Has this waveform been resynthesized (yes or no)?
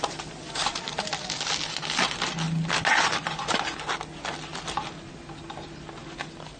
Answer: no